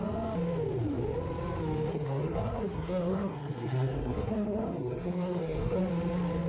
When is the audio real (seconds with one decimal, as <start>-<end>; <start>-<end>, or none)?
0.0-1.9; 5.8-6.5